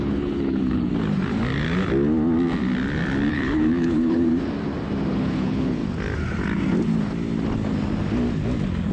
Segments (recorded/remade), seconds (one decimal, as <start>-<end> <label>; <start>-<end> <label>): 0.0-0.9 remade; 0.9-3.3 recorded; 3.3-4.3 remade; 4.3-5.1 recorded; 5.1-5.8 remade; 5.8-8.9 recorded